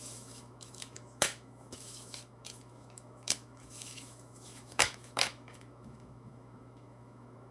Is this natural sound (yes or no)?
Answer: no